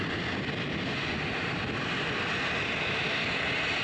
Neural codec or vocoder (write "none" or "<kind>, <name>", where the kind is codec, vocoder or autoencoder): none